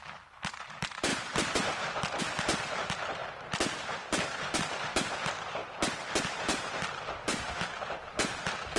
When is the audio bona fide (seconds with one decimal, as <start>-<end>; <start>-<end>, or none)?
5.6-6.2